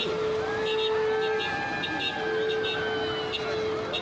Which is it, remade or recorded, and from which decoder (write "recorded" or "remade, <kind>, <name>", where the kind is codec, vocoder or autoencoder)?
recorded